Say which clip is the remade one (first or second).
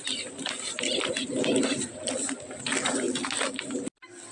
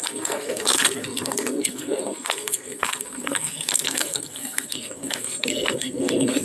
second